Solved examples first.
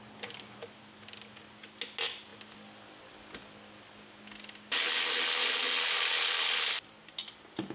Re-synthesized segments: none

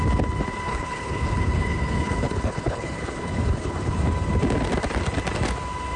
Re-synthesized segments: 0.7-4.0 (codec, HILCodec)

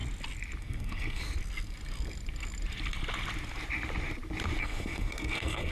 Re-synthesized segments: 0.6-1.2 (codec, SNAC); 4.6-5.7

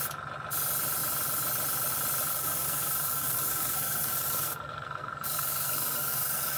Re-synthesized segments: 2.3-6.6 (codec, SNAC)

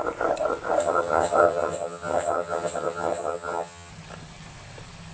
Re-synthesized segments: 0.8-3.9 (vocoder, HiFi-GAN)